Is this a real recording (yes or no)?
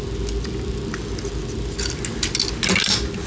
yes